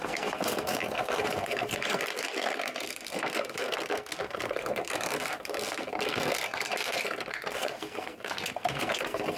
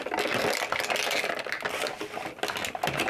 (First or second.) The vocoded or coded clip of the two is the first